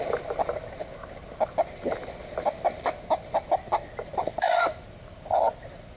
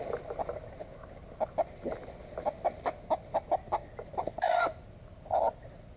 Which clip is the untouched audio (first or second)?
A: second